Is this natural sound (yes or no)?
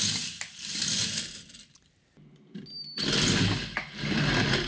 yes